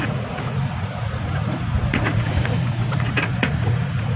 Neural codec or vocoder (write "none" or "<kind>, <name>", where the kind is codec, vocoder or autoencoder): vocoder, Vocos